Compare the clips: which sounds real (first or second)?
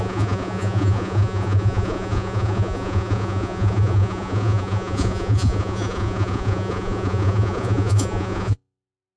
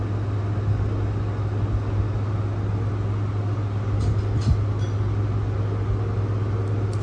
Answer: second